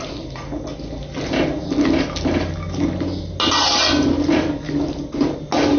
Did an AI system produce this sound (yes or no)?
no